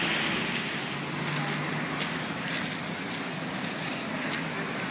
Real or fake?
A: real